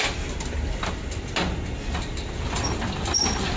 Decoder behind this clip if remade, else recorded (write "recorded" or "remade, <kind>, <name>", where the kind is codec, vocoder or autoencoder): recorded